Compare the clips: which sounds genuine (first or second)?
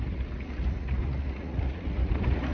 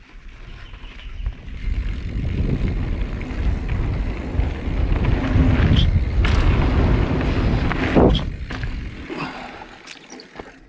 second